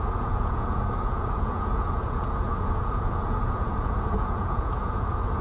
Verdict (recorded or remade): remade